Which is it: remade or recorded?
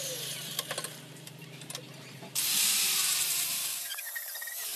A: remade